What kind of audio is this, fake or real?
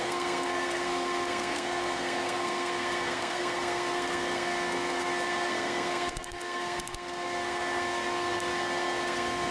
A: fake